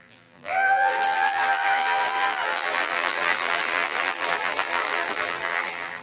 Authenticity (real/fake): fake